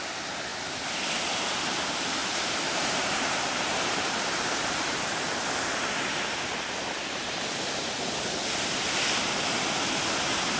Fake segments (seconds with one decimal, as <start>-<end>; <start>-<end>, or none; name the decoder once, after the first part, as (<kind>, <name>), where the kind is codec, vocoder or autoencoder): 0.5-1.2 (vocoder, BigVGAN v2); 2.2-5.4